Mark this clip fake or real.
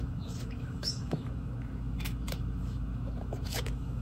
fake